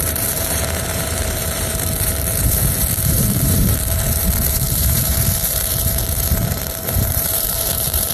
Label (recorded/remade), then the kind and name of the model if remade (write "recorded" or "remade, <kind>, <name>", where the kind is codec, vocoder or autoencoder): remade, vocoder, BigVGAN v2